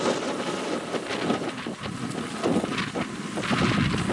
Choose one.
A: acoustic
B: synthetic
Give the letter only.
A